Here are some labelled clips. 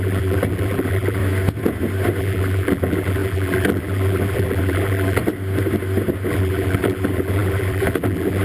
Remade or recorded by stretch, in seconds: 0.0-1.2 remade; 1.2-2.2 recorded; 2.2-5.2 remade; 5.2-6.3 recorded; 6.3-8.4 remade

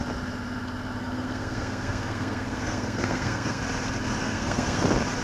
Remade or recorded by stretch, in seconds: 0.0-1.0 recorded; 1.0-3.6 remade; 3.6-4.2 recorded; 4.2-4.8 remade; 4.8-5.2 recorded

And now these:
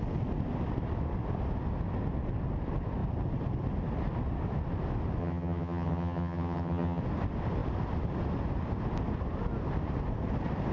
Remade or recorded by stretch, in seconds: 0.0-5.2 recorded; 5.2-7.0 remade; 7.0-10.7 recorded

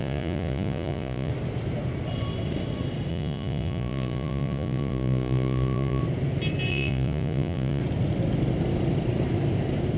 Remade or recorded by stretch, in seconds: 0.0-1.3 remade; 1.3-3.1 recorded; 3.1-6.0 remade; 6.0-6.7 recorded; 6.7-7.8 remade; 7.8-10.0 recorded